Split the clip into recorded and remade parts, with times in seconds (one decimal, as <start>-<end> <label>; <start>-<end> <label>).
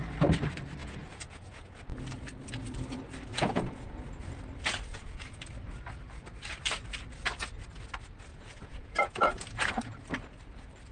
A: 0.0-0.8 recorded; 0.8-1.8 remade; 1.8-3.3 recorded; 3.3-4.0 remade; 4.0-4.9 recorded; 4.9-5.5 remade; 5.5-8.3 recorded; 8.3-10.0 remade; 10.0-10.9 recorded